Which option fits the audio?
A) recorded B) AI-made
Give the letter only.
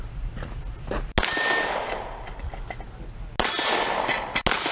A